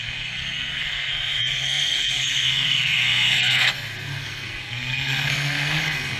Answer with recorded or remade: remade